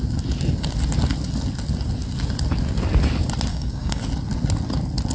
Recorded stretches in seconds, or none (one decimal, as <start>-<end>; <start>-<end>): 0.0-3.5; 4.0-5.1